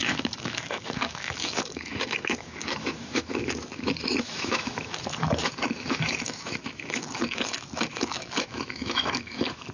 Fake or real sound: fake